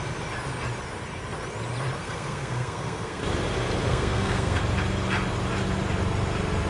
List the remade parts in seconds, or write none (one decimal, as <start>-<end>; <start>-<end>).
2.0-3.2; 3.9-4.6